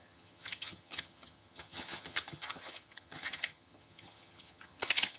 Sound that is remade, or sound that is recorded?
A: remade